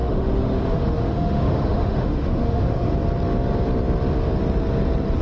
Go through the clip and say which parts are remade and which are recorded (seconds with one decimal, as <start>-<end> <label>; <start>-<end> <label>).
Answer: 0.0-2.9 remade; 2.9-5.2 recorded

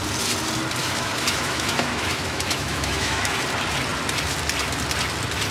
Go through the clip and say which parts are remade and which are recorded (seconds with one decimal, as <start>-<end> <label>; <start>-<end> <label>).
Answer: 0.0-0.8 recorded; 0.8-3.4 remade; 3.4-5.5 recorded

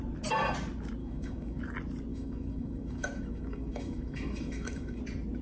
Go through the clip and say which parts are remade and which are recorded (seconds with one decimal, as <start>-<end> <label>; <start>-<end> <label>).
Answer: 0.0-1.0 recorded; 1.0-1.6 remade; 1.6-2.1 recorded; 2.1-5.0 remade; 5.0-5.4 recorded

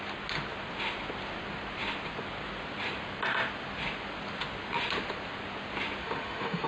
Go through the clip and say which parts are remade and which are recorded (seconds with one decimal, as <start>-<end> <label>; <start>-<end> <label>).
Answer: 0.0-6.0 recorded; 6.0-6.7 remade